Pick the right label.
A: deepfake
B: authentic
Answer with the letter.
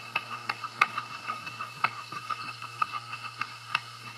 A